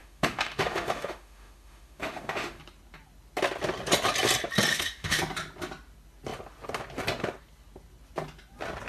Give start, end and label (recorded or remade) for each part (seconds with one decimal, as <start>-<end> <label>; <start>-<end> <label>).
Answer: 0.0-2.6 remade; 2.6-4.7 recorded; 4.7-5.2 remade; 5.2-8.9 recorded